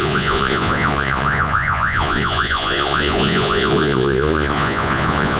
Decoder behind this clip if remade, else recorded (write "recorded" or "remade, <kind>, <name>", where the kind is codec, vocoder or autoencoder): remade, vocoder, Vocos